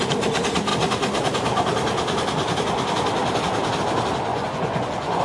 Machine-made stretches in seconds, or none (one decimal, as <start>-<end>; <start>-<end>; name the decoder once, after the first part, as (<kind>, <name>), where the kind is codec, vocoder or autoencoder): 4.3-5.2 (vocoder, Vocos)